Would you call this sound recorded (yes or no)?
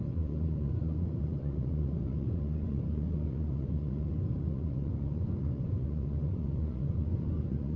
no